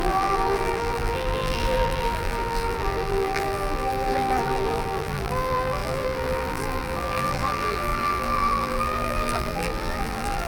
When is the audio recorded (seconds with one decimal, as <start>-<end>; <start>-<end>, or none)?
none